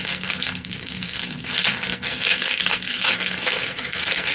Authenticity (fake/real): fake